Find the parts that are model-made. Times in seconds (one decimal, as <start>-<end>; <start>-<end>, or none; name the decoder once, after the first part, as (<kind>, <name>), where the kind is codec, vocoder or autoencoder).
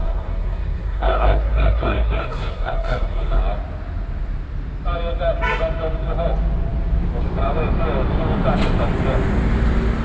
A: 0.0-3.4 (codec, SNAC)